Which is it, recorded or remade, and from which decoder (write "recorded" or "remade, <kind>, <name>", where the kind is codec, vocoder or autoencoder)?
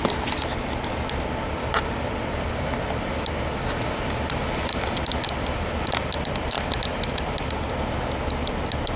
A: recorded